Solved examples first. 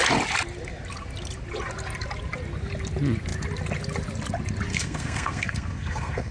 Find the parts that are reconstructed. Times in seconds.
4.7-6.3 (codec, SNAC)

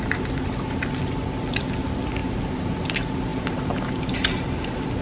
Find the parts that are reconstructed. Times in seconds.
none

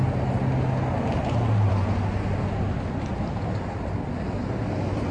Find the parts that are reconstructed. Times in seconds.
none

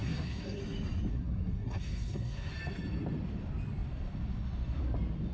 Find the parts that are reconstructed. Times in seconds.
0.0-0.6 (codec, SNAC); 1.1-2.5

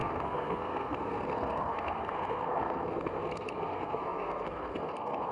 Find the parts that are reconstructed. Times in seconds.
0.0-5.3 (codec, SNAC)